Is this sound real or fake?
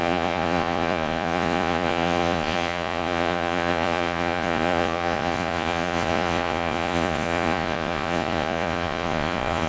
fake